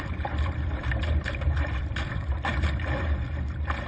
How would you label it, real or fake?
fake